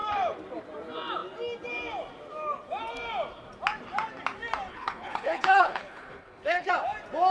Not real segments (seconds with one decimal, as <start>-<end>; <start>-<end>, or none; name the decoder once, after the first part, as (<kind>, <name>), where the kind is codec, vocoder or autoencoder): 4.7-6.7 (codec, HILCodec)